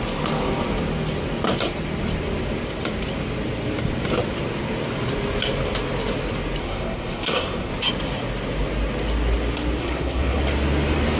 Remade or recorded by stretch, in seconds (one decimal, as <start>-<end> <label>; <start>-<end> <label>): 0.0-6.6 recorded; 6.6-7.7 remade; 7.7-9.8 recorded; 9.8-10.4 remade; 10.4-11.2 recorded